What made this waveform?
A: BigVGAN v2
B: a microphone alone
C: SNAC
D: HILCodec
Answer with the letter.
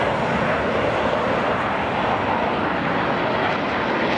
B